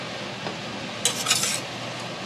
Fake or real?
real